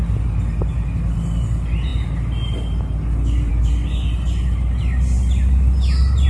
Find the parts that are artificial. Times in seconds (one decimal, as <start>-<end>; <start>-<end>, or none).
none